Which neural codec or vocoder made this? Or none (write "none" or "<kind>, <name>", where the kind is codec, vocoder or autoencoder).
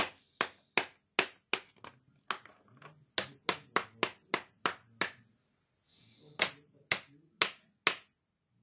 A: none